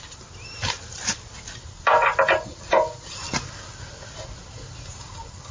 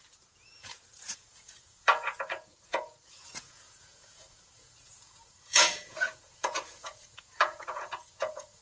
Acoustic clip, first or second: first